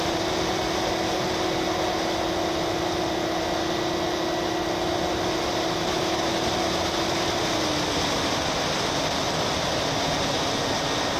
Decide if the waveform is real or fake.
real